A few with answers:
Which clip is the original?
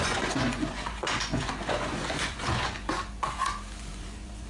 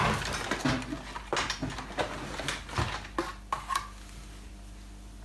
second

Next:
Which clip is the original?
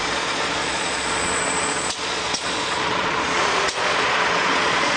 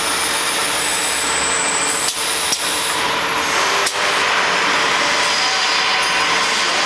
second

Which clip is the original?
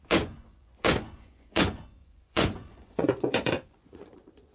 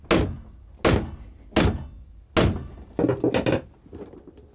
second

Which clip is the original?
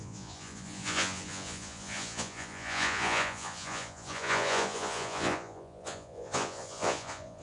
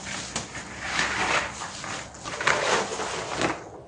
second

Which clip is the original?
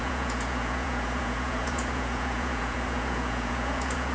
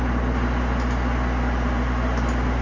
second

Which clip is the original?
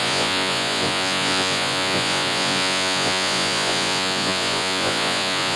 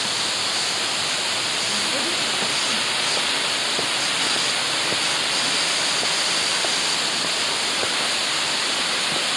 second